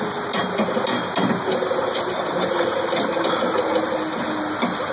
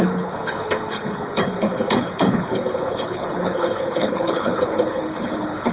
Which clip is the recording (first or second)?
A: first